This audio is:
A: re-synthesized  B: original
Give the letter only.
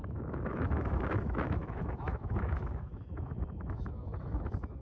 A